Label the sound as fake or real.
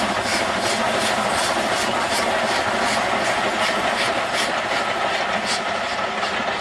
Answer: real